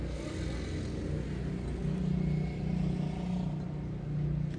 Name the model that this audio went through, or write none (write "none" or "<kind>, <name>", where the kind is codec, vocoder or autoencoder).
none